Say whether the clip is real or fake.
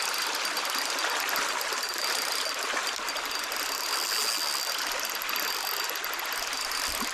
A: real